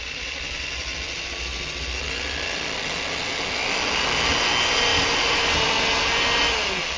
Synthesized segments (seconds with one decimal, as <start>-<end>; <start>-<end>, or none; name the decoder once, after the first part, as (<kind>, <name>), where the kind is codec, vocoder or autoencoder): none